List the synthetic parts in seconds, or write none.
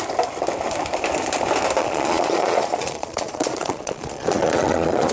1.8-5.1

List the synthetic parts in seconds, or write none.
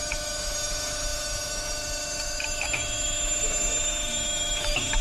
0.0-5.0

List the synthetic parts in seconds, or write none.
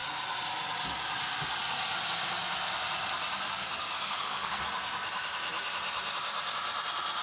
3.5-4.6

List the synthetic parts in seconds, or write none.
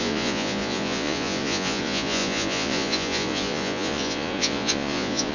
0.0-5.3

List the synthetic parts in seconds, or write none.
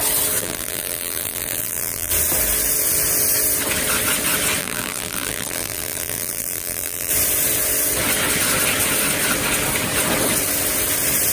0.4-2.1; 4.6-7.1